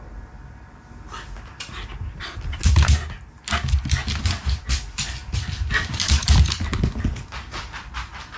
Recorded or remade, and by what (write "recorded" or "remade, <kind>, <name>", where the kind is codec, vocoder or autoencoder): recorded